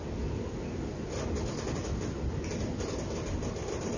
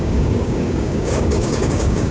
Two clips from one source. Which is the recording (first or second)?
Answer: first